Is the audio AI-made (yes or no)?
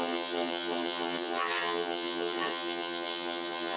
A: yes